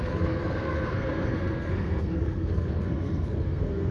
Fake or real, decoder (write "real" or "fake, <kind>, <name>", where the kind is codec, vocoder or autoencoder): fake, codec, SNAC